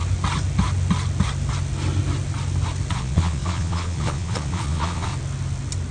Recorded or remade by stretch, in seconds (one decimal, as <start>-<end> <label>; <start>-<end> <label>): 0.0-2.9 recorded; 2.9-5.1 remade; 5.1-5.9 recorded